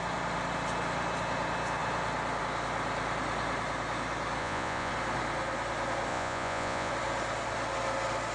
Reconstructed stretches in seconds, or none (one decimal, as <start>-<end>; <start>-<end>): 4.4-4.9; 6.1-6.9

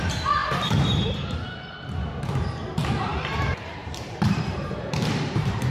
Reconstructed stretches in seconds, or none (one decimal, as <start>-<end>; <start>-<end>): 0.0-0.4; 2.3-5.7

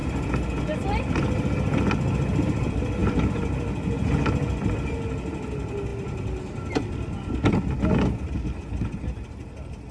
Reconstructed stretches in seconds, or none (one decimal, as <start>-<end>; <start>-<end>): none

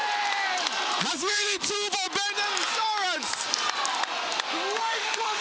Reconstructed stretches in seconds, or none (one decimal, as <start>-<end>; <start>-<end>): 1.1-1.6; 4.8-5.4

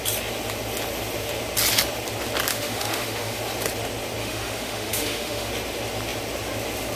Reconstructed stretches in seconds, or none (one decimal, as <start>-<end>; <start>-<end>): 2.5-3.4; 4.2-5.5